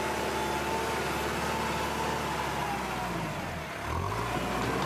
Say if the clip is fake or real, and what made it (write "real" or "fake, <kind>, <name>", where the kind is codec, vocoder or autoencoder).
real